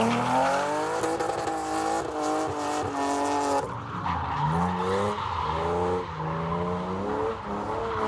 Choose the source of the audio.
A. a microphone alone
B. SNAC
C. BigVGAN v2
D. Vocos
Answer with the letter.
A